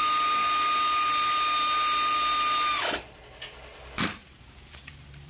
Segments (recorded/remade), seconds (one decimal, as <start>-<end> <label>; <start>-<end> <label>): 0.0-4.2 recorded; 4.2-5.3 remade